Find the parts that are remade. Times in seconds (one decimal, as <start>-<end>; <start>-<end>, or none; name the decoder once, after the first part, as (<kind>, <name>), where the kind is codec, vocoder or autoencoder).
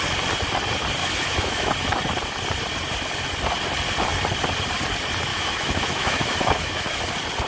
1.0-1.7 (autoencoder, DAC-VAE); 5.3-7.0